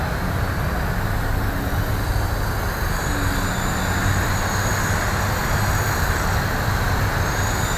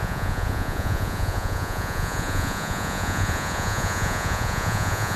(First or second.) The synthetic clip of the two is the second